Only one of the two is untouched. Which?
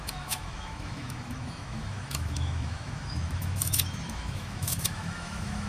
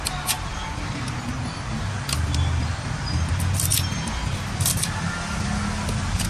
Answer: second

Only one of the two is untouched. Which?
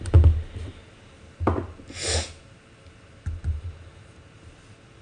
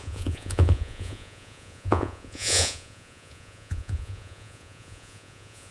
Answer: first